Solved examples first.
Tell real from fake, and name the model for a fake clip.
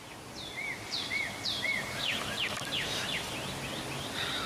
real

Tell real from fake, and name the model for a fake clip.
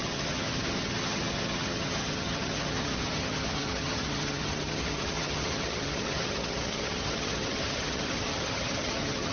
fake, vocoder, HiFi-GAN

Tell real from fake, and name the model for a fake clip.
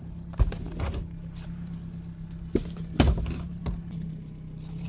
real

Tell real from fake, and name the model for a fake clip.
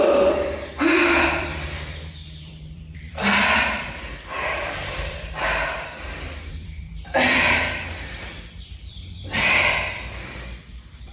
fake, vocoder, BigVGAN v2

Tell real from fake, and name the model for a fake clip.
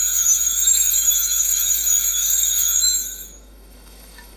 fake, autoencoder, DAC-VAE